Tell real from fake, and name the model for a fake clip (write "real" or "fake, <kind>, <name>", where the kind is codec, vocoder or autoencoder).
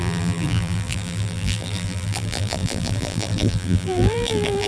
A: fake, vocoder, BigVGAN v2